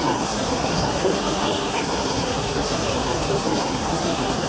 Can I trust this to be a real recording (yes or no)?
no